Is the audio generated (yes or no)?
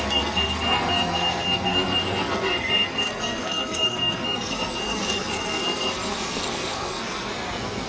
yes